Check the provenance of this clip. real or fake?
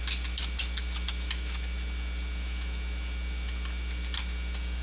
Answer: real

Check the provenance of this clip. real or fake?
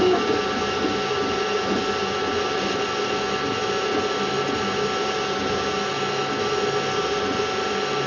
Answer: real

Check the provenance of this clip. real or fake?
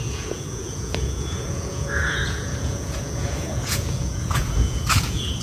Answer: fake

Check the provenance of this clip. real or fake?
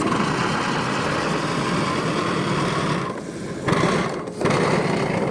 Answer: real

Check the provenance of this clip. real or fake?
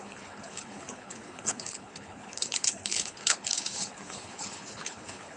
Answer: fake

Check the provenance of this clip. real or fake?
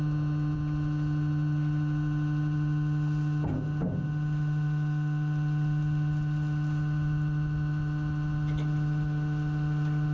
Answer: real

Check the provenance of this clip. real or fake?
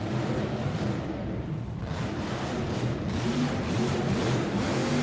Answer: fake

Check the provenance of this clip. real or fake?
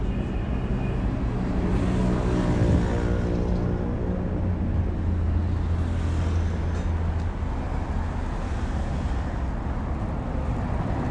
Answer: real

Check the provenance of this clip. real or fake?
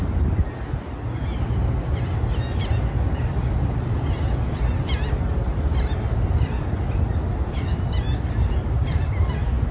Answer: real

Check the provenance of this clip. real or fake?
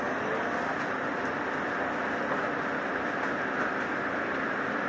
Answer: real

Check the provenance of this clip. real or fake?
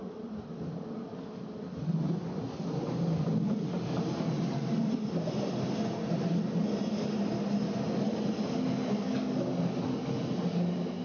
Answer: real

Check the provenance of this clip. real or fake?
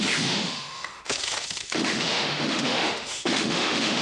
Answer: fake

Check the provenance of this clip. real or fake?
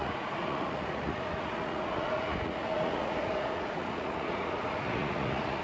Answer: fake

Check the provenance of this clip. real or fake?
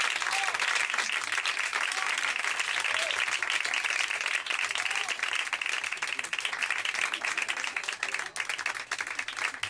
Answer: real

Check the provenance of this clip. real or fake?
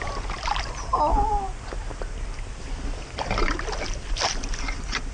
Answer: real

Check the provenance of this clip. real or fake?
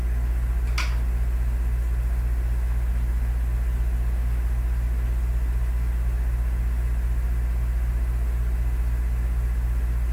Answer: real